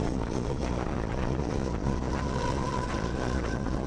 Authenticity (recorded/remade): remade